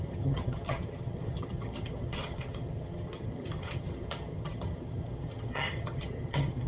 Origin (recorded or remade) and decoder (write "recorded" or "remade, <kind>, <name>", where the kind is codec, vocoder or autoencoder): remade, vocoder, HiFi-GAN